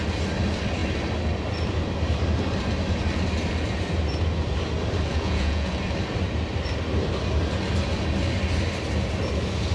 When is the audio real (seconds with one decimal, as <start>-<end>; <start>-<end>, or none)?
0.0-5.1; 5.7-9.7